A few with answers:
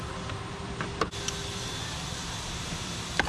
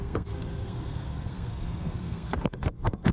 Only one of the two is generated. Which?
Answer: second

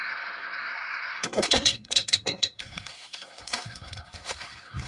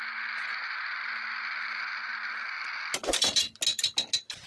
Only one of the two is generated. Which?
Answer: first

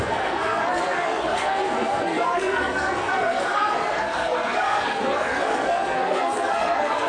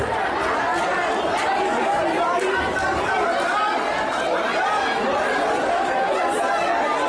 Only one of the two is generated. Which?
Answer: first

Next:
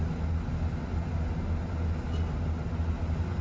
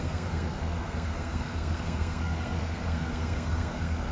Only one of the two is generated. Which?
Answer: second